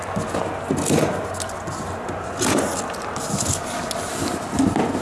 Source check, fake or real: real